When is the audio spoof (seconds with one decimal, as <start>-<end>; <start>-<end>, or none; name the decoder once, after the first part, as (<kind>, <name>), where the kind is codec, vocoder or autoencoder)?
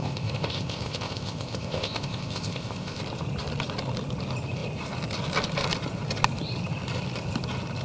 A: 0.0-3.0 (codec, ZipCodec)